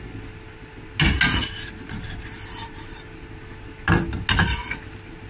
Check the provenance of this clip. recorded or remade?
recorded